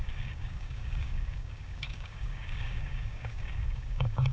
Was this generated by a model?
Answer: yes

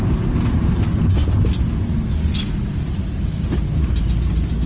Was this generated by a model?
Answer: no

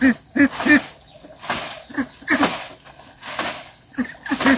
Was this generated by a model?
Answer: no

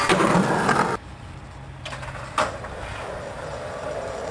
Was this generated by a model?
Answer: no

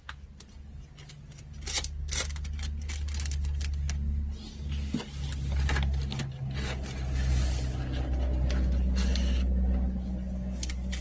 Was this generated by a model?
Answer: no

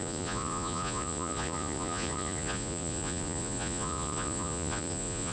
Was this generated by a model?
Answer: yes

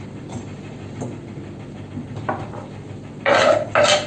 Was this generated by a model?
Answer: no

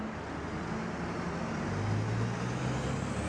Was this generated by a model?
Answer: no